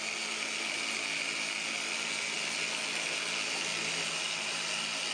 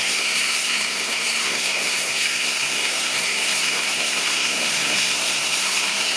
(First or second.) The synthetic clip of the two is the second